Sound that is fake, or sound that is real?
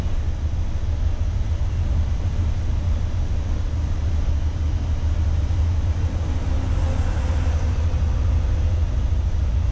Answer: real